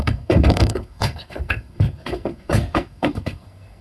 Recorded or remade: remade